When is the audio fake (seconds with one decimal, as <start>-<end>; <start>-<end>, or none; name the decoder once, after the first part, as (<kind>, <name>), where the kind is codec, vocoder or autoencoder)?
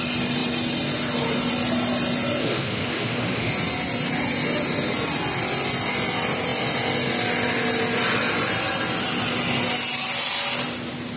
2.4-3.5 (autoencoder, DAC-VAE)